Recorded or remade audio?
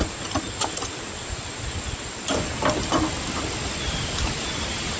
recorded